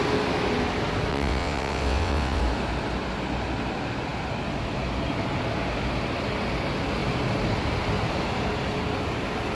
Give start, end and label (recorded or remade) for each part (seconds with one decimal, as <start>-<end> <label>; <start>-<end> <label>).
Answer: 0.0-1.1 recorded; 1.1-2.4 remade; 2.4-9.5 recorded